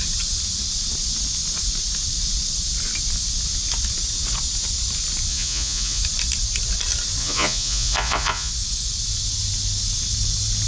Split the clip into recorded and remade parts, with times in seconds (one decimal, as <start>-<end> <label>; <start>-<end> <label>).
0.0-5.3 recorded; 5.3-6.0 remade; 6.0-7.2 recorded; 7.2-8.5 remade; 8.5-10.7 recorded